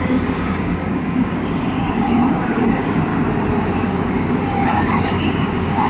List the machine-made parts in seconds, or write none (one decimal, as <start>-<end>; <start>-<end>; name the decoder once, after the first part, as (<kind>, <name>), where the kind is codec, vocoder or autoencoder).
0.0-3.1 (codec, DAC); 3.8-5.9